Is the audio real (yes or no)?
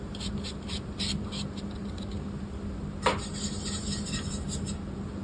yes